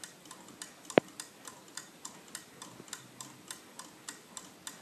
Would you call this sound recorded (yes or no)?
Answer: yes